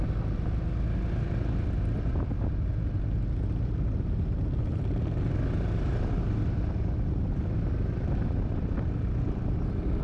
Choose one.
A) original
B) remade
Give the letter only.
A